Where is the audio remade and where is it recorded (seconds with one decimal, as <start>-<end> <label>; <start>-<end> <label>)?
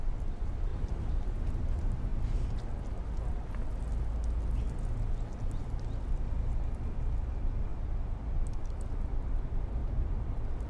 0.0-0.7 recorded; 0.7-1.5 remade; 1.5-10.7 recorded